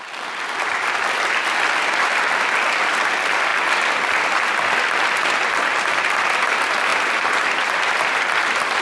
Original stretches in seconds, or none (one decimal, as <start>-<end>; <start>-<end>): 3.5-4.3